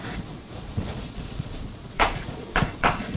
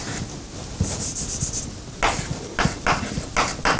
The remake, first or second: first